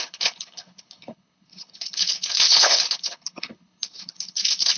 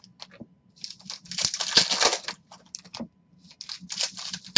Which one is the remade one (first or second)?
first